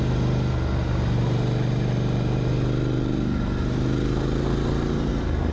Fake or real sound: real